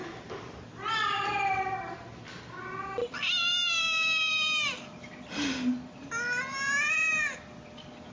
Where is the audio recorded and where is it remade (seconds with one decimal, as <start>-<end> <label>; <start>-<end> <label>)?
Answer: 0.0-2.5 remade; 2.5-3.0 recorded; 3.0-8.1 remade